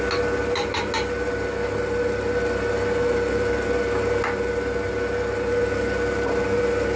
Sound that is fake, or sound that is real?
real